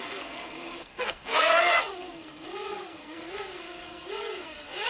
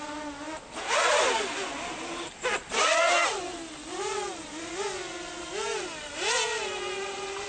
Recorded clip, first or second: second